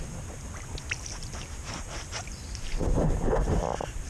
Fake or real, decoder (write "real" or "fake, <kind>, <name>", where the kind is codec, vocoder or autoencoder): real